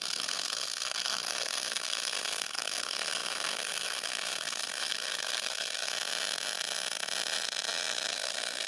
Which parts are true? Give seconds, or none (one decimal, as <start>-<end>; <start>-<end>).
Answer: 5.9-8.1